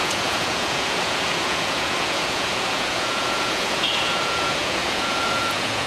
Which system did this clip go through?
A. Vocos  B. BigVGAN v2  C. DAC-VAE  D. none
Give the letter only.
A